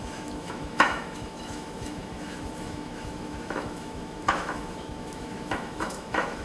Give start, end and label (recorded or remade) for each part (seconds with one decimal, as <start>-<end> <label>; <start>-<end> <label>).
0.0-6.4 remade